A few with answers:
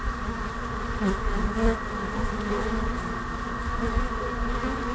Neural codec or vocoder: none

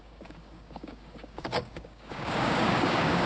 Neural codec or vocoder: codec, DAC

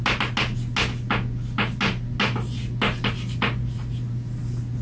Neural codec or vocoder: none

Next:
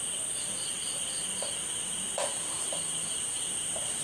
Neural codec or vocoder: none